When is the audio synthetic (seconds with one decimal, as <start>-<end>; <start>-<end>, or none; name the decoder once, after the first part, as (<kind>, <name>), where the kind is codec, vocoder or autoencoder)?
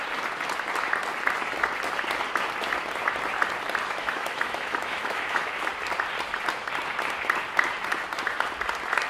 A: 4.0-5.6 (autoencoder, DAC-VAE)